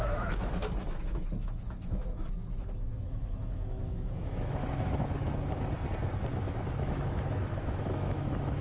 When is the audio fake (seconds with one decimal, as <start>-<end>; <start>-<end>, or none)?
0.0-5.3; 6.4-8.6